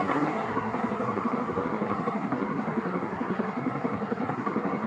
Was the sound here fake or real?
fake